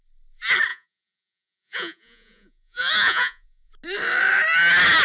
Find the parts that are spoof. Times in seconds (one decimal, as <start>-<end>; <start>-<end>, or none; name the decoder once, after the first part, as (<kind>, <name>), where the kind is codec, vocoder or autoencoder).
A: 0.7-3.7 (vocoder, Vocos)